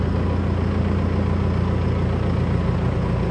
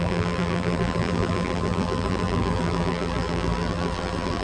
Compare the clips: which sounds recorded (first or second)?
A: first